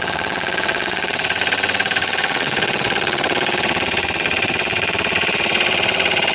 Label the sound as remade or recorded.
remade